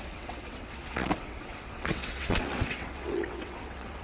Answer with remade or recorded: remade